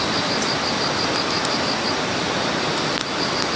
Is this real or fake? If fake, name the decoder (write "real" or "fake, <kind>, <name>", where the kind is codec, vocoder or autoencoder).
real